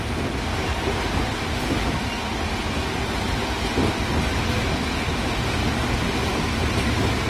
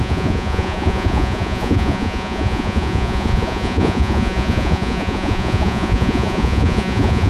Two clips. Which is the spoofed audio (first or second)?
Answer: second